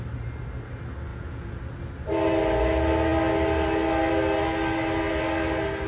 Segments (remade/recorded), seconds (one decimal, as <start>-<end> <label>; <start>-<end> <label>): 0.0-1.1 recorded; 1.1-1.6 remade; 1.6-5.9 recorded